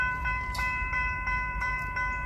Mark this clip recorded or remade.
remade